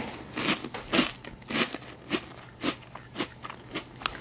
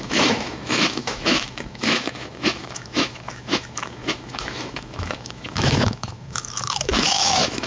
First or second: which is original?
first